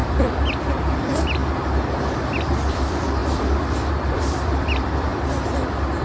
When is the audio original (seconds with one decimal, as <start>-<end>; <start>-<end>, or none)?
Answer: 1.4-2.1; 5.1-6.0